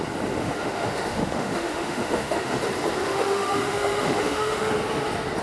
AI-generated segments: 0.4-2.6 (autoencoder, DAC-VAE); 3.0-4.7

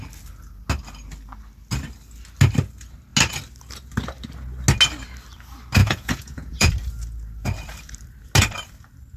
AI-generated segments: 5.8-6.7 (vocoder, Vocos)

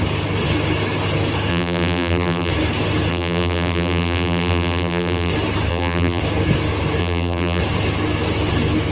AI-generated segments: 1.5-2.5 (vocoder, BigVGAN v2); 3.1-5.3; 5.7-6.2; 7.0-7.6

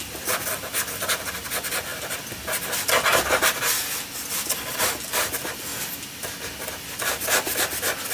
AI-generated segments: none

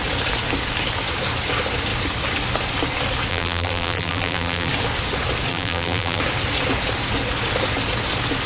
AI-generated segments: 3.3-4.7 (vocoder, BigVGAN v2); 5.5-6.2